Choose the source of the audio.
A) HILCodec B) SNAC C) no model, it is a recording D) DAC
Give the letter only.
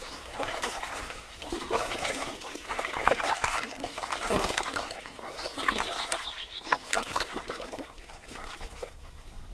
B